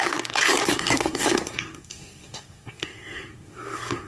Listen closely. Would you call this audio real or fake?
fake